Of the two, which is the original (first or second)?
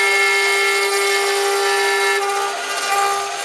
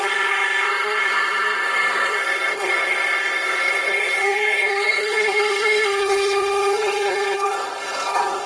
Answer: first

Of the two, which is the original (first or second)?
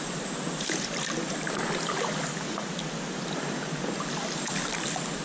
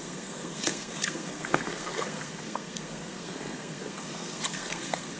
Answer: first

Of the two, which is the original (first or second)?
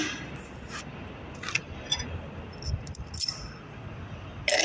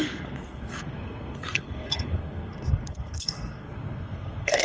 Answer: first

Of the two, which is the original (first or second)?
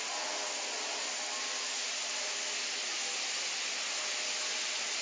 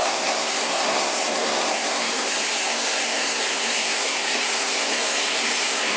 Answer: first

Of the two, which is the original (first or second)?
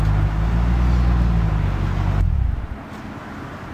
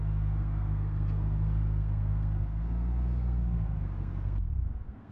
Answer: first